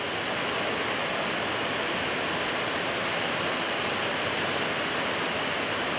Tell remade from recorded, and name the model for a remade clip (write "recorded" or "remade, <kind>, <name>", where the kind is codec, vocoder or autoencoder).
recorded